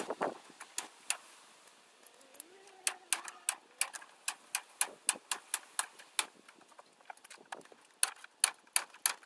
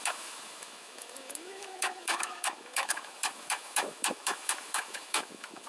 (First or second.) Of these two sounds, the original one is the first